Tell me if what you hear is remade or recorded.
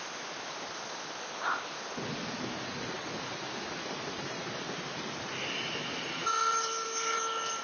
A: recorded